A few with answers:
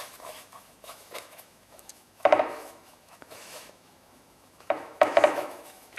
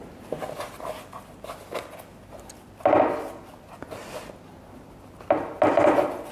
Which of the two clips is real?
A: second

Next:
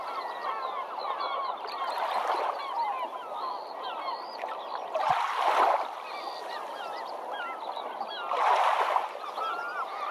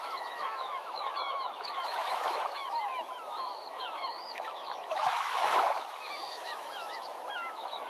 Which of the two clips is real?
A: first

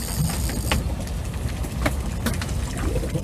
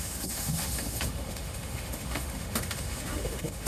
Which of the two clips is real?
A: first